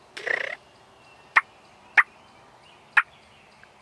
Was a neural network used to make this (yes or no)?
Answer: no